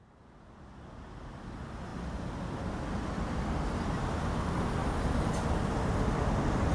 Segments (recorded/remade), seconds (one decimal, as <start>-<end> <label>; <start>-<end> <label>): 0.0-6.7 recorded